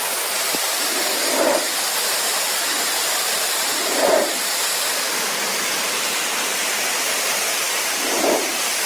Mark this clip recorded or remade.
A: remade